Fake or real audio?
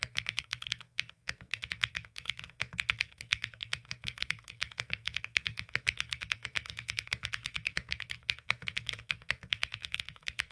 fake